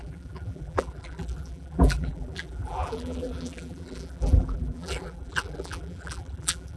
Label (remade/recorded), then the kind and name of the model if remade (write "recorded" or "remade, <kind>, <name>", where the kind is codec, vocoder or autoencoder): remade, vocoder, BigVGAN v2